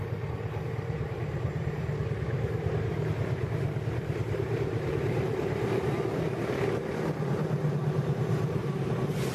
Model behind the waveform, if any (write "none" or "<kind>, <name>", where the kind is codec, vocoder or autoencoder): vocoder, BigVGAN v2